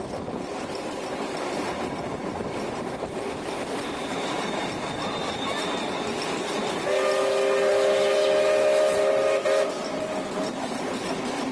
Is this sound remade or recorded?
recorded